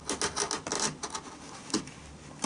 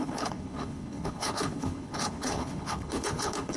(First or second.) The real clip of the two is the first